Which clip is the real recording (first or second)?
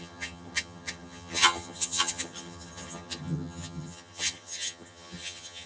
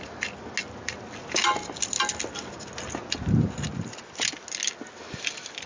second